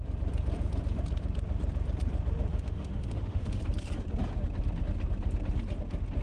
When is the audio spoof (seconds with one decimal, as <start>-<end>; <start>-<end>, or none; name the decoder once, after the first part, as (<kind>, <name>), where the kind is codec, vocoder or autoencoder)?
2.5-3.6 (autoencoder, DAC-VAE)